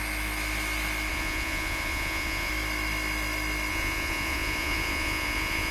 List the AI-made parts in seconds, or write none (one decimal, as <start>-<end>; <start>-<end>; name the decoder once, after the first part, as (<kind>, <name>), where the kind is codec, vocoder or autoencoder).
1.1-2.5 (vocoder, Vocos); 3.7-5.7